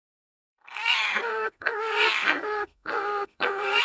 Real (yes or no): no